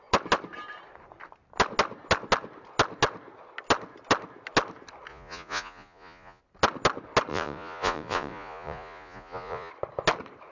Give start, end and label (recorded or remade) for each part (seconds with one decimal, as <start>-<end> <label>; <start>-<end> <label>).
0.0-5.1 recorded; 5.1-6.4 remade; 6.4-7.3 recorded; 7.3-9.7 remade; 9.7-10.5 recorded